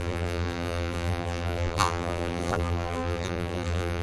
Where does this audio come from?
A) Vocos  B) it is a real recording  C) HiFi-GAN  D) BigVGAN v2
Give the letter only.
D